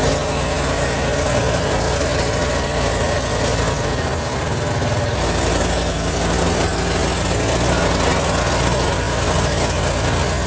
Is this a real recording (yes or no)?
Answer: yes